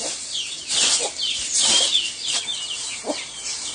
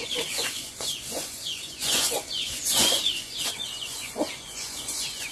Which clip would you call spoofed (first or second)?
second